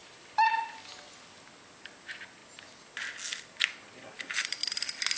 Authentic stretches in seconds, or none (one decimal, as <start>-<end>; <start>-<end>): 0.0-5.2